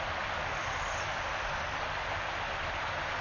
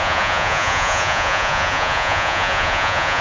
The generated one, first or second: second